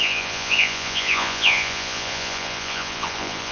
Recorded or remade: remade